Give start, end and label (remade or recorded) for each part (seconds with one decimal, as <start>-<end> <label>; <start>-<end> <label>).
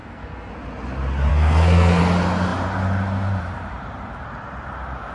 0.0-0.5 remade; 0.5-1.3 recorded; 1.3-2.0 remade; 2.0-5.1 recorded